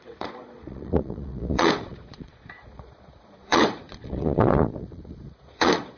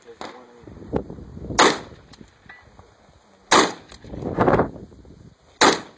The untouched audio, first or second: second